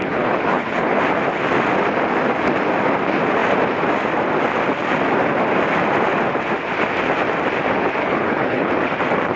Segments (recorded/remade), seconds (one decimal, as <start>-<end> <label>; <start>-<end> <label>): 0.0-1.0 remade; 1.0-8.0 recorded; 8.0-8.7 remade; 8.7-9.4 recorded